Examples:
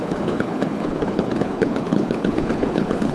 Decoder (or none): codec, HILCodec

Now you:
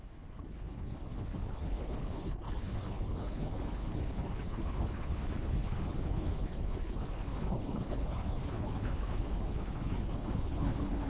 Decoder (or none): codec, HILCodec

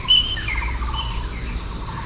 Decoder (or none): none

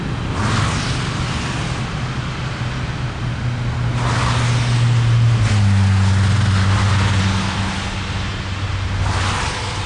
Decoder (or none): none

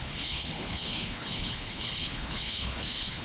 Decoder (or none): codec, HILCodec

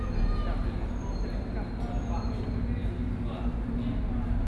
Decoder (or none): none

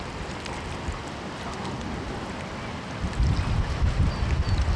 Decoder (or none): none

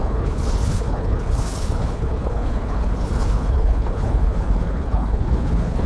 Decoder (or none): codec, HILCodec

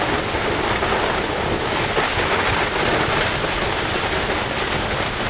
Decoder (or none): none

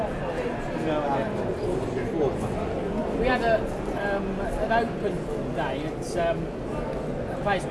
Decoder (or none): none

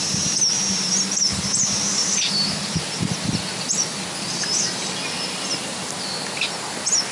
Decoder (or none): none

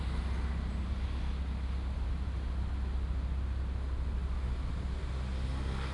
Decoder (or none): none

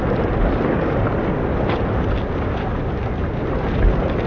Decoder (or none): none